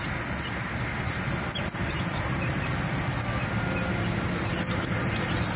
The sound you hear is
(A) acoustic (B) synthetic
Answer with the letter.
A